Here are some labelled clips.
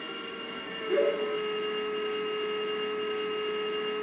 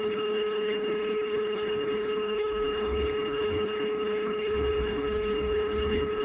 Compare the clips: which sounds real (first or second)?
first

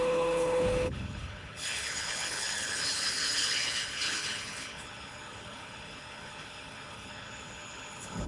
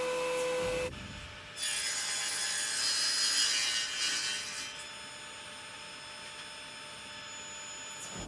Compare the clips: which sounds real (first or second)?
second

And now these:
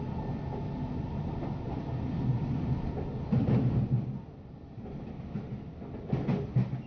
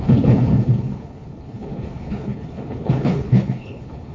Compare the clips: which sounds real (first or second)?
first